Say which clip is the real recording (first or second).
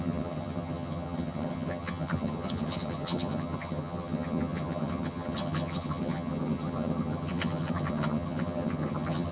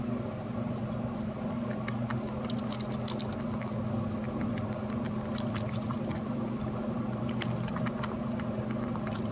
second